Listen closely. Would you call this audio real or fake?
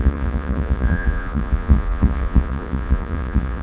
fake